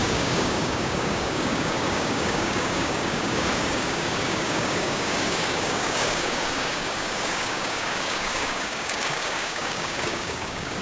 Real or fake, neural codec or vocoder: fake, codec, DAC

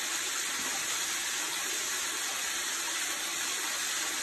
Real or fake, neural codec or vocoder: real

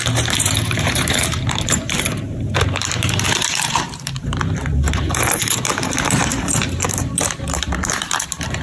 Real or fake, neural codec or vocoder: fake, vocoder, BigVGAN v2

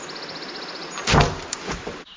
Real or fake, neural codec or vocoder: real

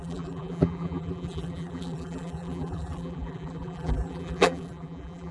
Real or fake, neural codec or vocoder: fake, vocoder, BigVGAN v2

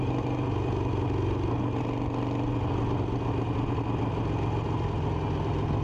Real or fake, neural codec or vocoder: real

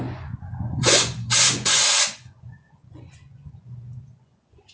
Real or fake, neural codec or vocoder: fake, vocoder, Vocos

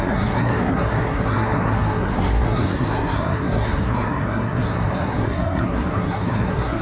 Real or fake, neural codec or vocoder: fake, codec, SNAC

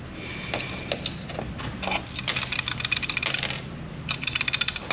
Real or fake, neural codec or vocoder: real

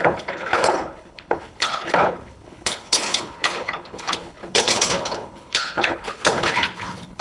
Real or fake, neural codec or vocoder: fake, codec, HILCodec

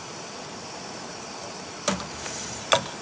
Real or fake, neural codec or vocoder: fake, vocoder, BigVGAN v2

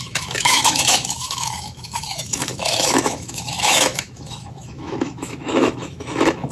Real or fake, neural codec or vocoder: fake, autoencoder, DAC-VAE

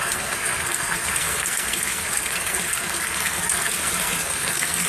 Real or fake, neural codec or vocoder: fake, codec, SNAC